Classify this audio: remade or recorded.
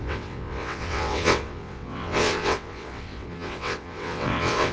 remade